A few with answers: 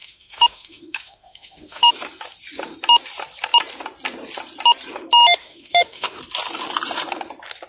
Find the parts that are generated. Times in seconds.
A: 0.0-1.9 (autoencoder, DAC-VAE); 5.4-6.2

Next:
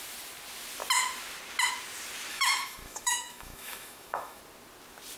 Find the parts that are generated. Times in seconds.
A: 2.3-4.4 (autoencoder, DAC-VAE)

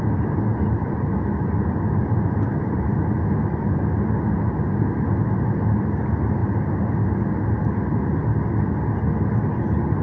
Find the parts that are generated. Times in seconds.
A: none

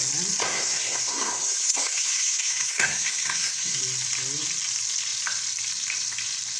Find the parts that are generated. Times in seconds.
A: 0.4-3.8 (codec, SNAC)

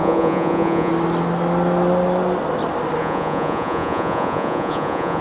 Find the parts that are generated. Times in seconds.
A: 0.0-0.9 (vocoder, Vocos); 3.0-5.2

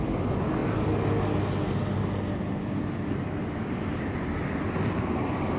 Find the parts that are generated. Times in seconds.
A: none

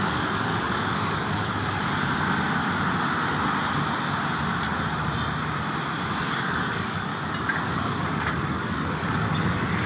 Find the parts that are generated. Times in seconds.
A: 0.0-1.8 (codec, DAC); 6.3-7.1; 7.7-9.9

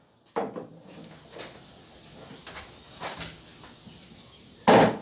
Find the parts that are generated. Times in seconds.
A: none